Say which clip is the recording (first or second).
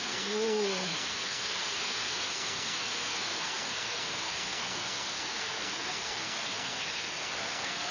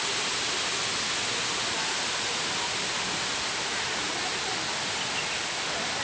second